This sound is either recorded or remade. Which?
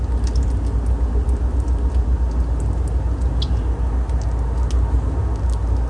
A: recorded